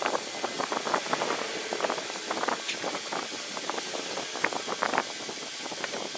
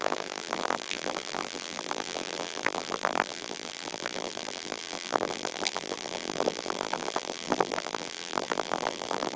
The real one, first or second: first